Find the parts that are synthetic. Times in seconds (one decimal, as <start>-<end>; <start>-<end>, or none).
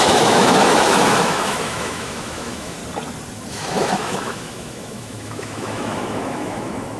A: 0.0-2.8; 3.5-7.0